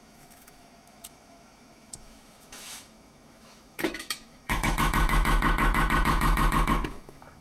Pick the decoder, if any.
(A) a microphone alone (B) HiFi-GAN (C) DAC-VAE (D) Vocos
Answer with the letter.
C